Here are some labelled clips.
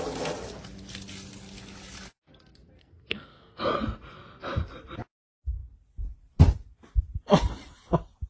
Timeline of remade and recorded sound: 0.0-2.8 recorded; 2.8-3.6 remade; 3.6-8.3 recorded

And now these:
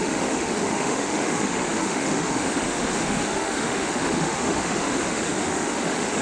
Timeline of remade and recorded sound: 0.0-6.2 remade

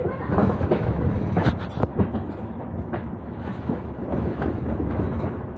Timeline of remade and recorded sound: 0.0-0.4 recorded; 0.4-1.5 remade; 1.5-1.9 recorded; 1.9-5.6 remade

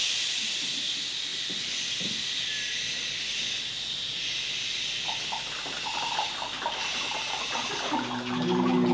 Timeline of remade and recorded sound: 0.0-8.9 recorded

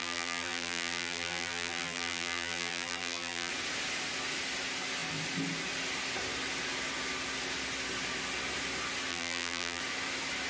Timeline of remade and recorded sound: 0.0-3.5 remade; 3.5-9.1 recorded; 9.1-9.8 remade; 9.8-10.5 recorded